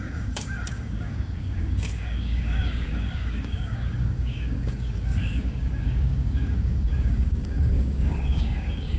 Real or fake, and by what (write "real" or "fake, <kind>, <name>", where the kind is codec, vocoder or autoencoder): fake, codec, DAC